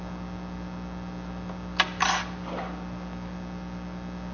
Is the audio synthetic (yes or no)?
no